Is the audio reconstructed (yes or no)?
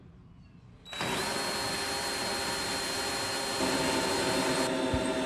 no